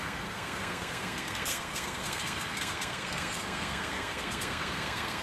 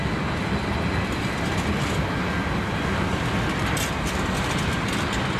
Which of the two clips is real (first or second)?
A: second